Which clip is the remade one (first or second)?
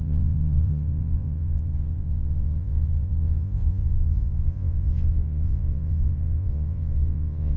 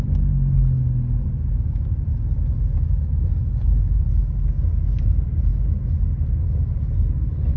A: first